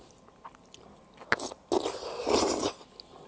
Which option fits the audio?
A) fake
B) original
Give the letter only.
B